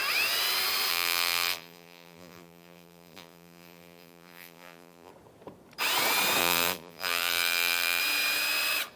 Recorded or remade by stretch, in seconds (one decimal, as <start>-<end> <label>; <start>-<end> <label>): 0.0-0.9 recorded; 0.9-5.1 remade; 5.1-6.4 recorded; 6.4-8.0 remade; 8.0-9.0 recorded